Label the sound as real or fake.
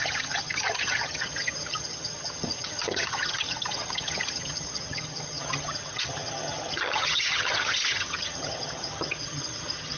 fake